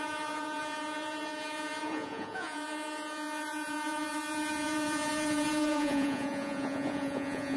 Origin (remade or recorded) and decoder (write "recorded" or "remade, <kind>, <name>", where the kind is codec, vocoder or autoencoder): remade, vocoder, Vocos